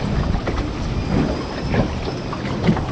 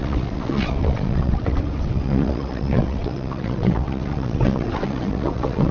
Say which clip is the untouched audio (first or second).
first